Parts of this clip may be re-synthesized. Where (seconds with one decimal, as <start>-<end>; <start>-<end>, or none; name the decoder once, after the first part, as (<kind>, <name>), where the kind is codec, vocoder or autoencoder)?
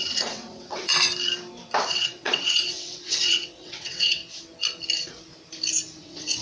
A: 0.0-0.9 (vocoder, WaveNeXt); 1.9-4.2; 6.0-6.4